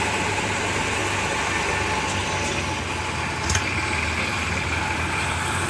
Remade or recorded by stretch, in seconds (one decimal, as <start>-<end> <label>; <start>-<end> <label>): 0.0-1.0 remade; 1.0-4.4 recorded; 4.4-5.7 remade